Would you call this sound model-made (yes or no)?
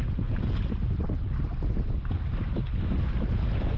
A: no